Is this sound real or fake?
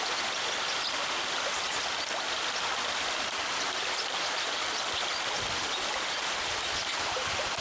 fake